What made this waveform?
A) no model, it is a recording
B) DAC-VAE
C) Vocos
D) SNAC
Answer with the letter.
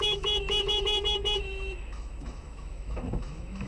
B